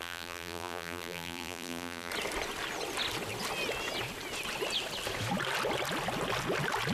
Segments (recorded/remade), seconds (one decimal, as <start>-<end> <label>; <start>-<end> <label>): 0.0-2.1 remade; 2.1-6.9 recorded